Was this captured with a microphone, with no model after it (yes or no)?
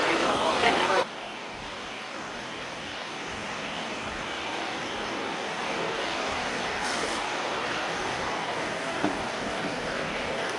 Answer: no